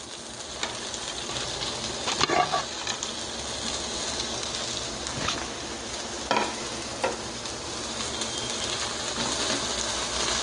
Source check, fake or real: real